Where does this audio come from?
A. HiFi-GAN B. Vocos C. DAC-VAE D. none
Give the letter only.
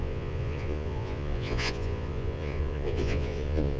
B